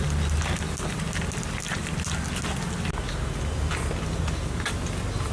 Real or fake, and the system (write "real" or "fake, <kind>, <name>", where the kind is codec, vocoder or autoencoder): real